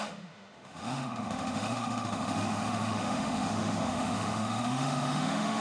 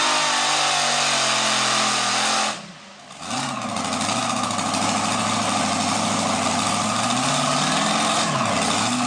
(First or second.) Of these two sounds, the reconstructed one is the first